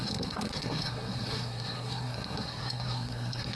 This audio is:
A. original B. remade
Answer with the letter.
B